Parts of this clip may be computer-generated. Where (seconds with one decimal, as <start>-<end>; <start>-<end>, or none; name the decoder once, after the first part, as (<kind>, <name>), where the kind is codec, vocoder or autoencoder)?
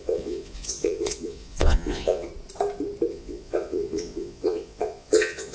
0.0-2.3 (vocoder, Vocos); 3.1-5.5